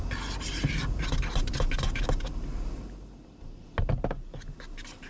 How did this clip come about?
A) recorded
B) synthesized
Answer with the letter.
A